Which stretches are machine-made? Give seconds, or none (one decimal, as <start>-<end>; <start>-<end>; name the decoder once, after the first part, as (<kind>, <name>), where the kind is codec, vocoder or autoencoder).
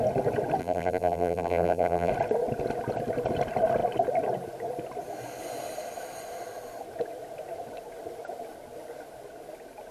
0.6-2.1 (vocoder, BigVGAN v2)